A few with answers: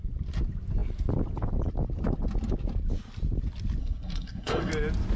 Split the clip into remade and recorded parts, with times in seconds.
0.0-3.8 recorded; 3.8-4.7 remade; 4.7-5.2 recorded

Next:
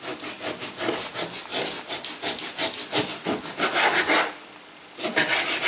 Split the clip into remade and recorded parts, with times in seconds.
0.0-5.7 recorded

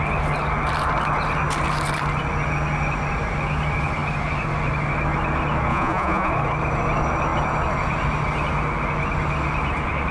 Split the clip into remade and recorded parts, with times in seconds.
0.0-5.7 recorded; 5.7-6.3 remade; 6.3-10.1 recorded

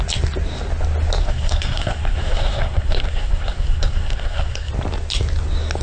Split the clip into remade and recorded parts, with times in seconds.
0.0-1.2 recorded; 1.2-4.7 remade; 4.7-5.8 recorded

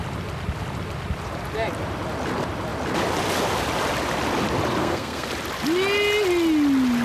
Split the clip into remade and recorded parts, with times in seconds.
0.0-4.8 recorded; 4.8-5.3 remade; 5.3-7.0 recorded

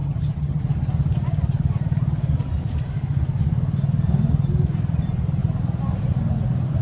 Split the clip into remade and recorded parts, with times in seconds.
0.0-0.6 remade; 0.6-6.8 recorded